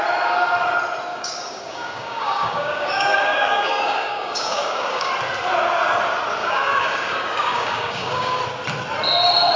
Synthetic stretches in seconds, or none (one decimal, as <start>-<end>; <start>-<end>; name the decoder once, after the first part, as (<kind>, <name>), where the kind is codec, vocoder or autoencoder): 1.1-5.1 (codec, DAC); 6.4-8.4